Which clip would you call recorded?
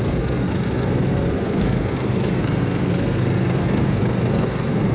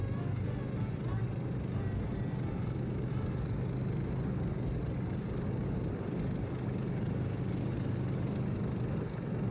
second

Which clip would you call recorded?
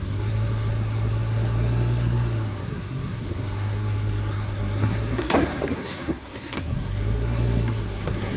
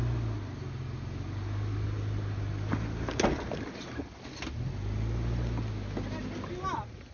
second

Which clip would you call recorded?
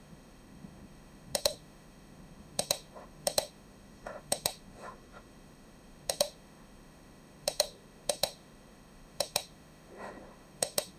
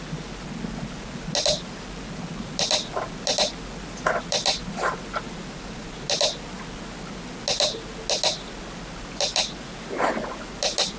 second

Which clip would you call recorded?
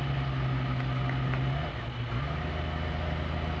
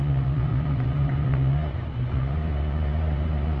first